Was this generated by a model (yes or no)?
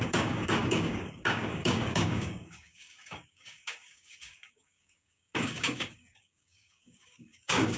yes